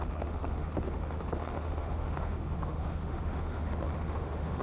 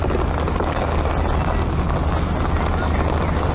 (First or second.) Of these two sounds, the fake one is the first